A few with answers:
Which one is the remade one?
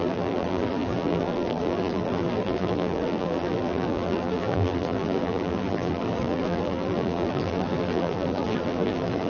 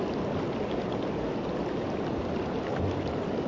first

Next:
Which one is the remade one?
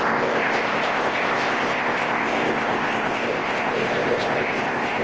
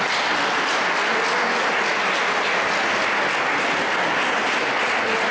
first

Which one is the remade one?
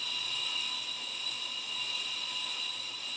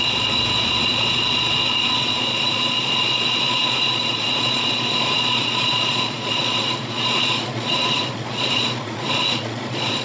second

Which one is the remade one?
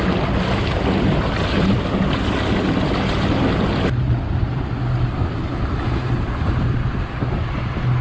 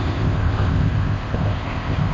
second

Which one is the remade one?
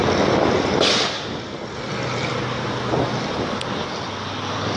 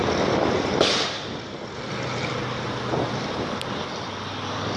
second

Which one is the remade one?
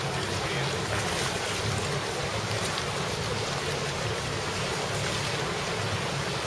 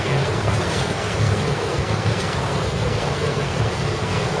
second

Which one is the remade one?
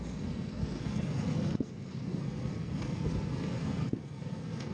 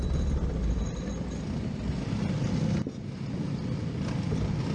first